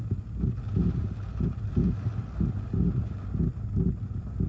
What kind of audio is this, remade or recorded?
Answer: recorded